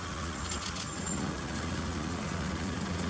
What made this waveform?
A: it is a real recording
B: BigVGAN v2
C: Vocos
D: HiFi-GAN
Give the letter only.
C